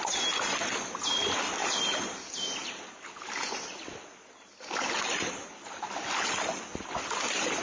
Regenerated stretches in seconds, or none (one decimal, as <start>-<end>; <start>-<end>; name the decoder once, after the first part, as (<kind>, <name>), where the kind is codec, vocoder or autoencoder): none